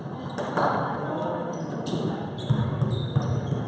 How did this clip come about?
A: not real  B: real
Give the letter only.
B